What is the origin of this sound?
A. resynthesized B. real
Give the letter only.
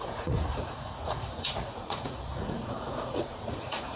A